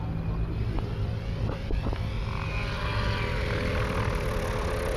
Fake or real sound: real